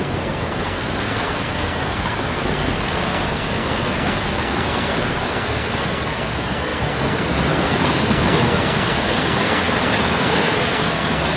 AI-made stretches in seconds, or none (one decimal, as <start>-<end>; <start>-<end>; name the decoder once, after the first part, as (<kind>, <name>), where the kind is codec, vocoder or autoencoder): 0.0-11.4 (codec, SNAC)